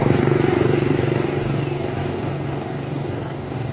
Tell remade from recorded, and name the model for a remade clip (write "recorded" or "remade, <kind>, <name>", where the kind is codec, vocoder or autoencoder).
remade, codec, DAC